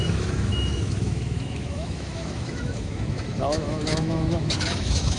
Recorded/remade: remade